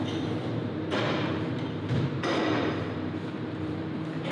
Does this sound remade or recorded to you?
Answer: remade